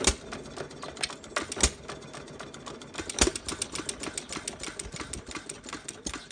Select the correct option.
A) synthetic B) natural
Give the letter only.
B